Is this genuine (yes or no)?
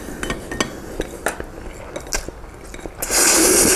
yes